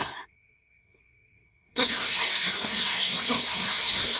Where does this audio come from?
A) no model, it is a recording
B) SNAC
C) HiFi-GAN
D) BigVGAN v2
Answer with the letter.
B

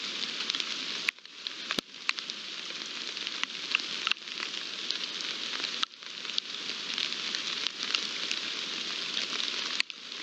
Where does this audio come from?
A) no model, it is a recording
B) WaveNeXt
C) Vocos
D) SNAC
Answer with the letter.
A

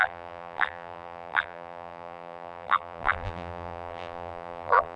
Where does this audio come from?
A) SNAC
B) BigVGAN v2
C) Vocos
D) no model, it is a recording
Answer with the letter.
B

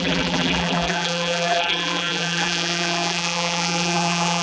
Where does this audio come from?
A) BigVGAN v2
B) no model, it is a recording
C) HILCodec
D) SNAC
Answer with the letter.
A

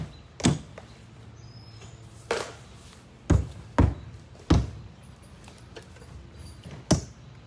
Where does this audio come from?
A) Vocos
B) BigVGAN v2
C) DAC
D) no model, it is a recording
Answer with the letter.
D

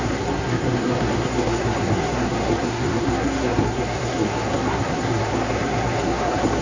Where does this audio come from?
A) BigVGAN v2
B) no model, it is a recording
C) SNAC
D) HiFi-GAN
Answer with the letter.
C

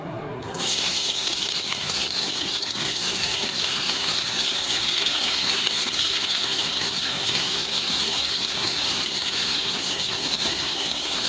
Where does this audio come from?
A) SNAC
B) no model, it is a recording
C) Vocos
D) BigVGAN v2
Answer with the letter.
A